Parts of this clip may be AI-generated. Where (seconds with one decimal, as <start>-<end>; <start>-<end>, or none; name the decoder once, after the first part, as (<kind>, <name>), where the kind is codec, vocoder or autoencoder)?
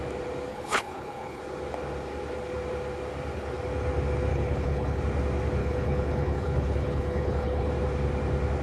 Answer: 0.5-1.4 (codec, HILCodec); 4.3-5.0; 5.6-7.7